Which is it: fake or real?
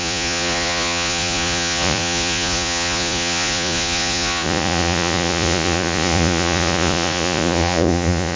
fake